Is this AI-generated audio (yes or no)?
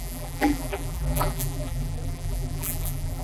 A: yes